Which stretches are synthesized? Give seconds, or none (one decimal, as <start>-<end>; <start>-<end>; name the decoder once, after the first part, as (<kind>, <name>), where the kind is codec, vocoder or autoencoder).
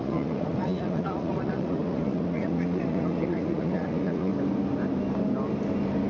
0.0-4.3 (vocoder, Vocos)